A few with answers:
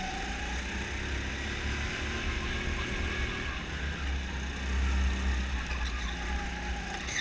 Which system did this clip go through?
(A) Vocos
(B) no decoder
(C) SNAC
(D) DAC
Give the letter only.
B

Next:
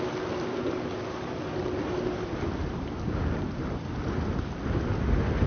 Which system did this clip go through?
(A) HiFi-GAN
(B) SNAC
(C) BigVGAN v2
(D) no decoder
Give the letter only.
D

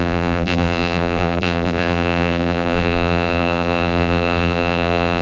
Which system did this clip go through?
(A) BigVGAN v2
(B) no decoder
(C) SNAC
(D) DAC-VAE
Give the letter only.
A